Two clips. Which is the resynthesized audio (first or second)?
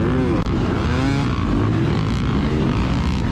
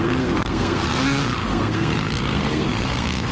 second